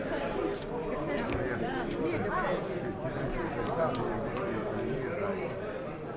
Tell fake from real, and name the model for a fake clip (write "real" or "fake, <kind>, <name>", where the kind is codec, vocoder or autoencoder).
real